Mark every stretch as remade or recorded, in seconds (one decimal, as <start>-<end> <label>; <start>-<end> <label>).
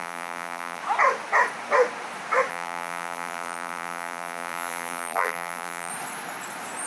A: 0.0-0.8 remade; 0.8-2.5 recorded; 2.5-5.9 remade; 5.9-6.9 recorded